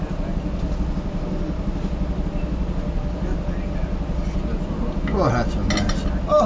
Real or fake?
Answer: real